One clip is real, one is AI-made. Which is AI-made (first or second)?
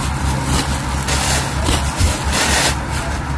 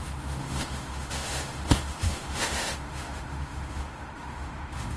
second